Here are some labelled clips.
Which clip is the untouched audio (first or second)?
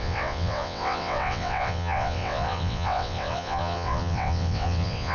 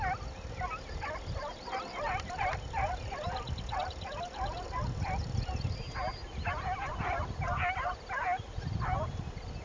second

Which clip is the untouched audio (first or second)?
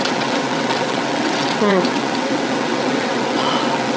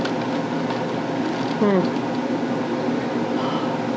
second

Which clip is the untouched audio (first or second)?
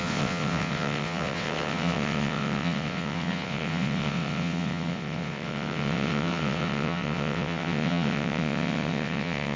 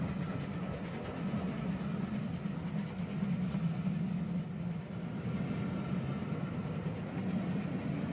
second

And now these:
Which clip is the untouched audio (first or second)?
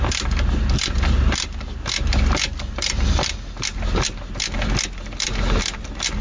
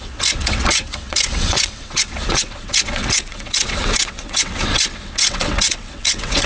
first